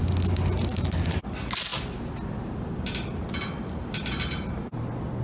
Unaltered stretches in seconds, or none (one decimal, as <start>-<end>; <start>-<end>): 0.0-5.2